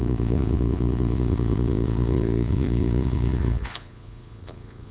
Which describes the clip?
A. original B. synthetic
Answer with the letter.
B